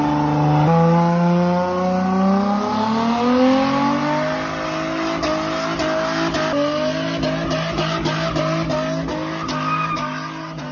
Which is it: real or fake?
real